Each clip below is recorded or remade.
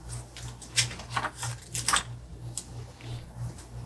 recorded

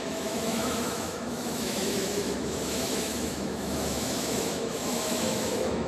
remade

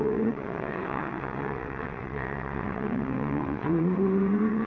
remade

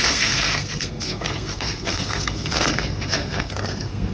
remade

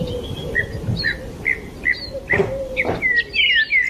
recorded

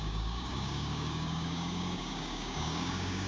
remade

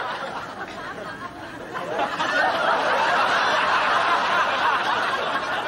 recorded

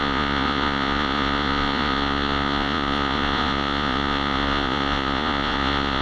remade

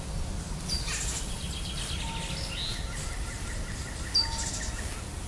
recorded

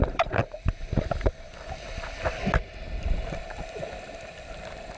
remade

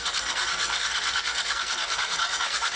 remade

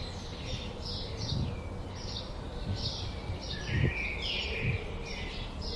recorded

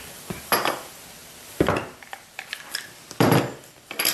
remade